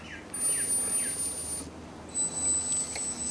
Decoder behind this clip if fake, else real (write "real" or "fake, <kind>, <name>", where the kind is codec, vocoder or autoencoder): real